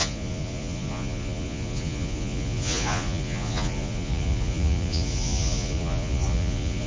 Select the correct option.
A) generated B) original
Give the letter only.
A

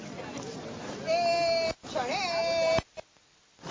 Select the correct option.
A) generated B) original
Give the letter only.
B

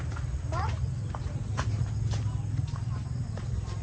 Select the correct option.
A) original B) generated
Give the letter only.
A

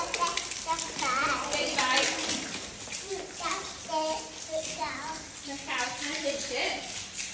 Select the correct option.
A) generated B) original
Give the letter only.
B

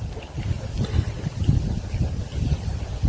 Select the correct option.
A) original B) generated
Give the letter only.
A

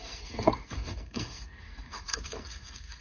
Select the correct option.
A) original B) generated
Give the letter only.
B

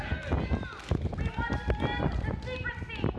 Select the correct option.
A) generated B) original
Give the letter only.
B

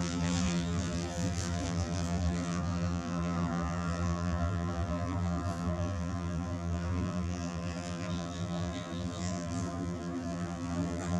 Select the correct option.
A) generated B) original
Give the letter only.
A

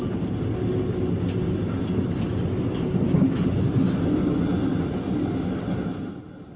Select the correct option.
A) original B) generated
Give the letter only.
A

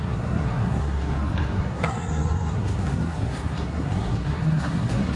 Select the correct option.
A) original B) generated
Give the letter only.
B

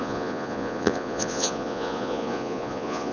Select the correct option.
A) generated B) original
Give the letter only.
A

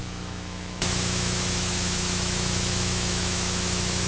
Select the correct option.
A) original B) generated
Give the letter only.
B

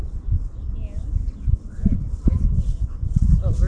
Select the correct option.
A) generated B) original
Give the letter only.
B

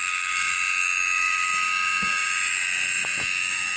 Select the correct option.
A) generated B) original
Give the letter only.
A